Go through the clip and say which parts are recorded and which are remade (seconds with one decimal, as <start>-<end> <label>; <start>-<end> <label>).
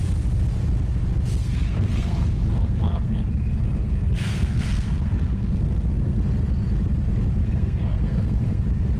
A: 0.0-1.4 recorded; 1.4-6.2 remade; 6.2-7.4 recorded; 7.4-8.6 remade; 8.6-9.0 recorded